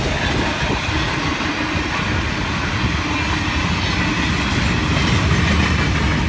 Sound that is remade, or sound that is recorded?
recorded